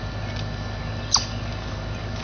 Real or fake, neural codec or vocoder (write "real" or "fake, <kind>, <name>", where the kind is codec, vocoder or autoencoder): real